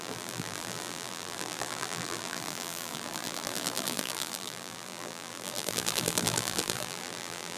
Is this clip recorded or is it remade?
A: remade